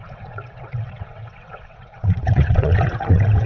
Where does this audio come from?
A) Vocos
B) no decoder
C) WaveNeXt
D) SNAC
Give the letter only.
C